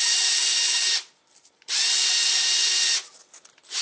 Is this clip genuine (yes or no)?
yes